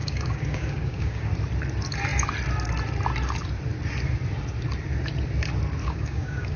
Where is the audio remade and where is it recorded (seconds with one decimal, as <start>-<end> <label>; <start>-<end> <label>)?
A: 0.0-1.3 remade; 1.3-5.8 recorded; 5.8-6.6 remade